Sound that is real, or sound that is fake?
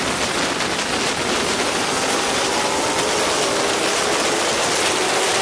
real